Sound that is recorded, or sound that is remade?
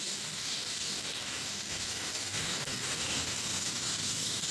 remade